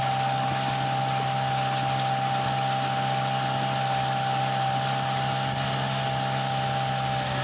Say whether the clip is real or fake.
real